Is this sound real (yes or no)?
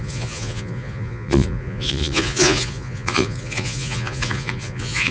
no